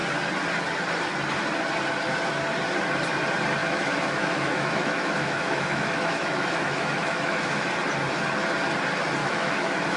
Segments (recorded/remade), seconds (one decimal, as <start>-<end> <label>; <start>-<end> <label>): 0.0-3.6 recorded; 3.6-7.7 remade; 7.7-9.2 recorded; 9.2-10.0 remade